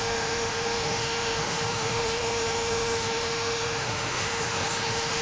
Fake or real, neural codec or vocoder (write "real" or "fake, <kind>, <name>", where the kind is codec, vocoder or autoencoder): fake, autoencoder, DAC-VAE